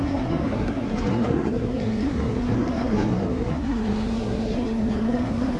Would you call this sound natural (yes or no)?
no